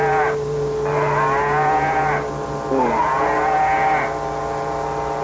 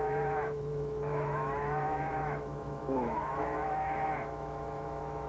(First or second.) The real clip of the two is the first